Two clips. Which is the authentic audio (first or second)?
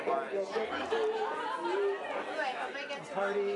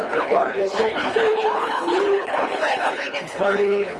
first